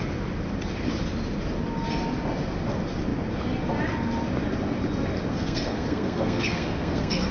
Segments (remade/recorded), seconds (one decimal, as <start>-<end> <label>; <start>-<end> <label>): 0.0-5.3 recorded; 5.3-7.3 remade